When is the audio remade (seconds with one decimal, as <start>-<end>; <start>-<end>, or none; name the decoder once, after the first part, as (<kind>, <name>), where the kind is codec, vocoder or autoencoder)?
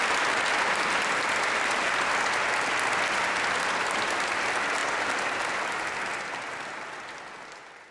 none